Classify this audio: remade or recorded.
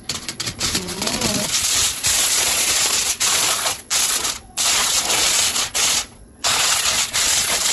remade